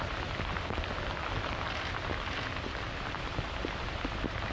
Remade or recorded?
recorded